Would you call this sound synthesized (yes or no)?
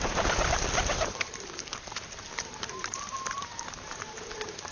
yes